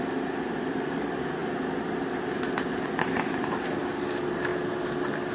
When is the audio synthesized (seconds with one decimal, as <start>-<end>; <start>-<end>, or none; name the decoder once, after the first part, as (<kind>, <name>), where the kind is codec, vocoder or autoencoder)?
none